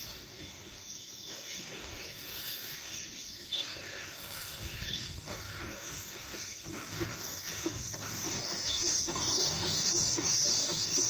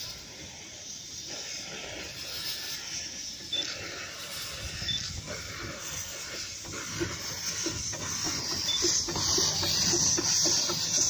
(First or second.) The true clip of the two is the second